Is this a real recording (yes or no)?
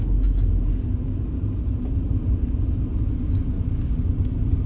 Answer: yes